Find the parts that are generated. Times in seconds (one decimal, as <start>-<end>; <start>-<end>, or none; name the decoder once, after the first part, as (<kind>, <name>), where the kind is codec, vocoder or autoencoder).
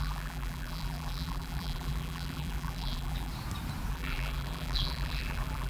0.0-3.3 (vocoder, BigVGAN v2); 3.9-5.7